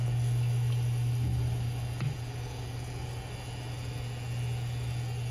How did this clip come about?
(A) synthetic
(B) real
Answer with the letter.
B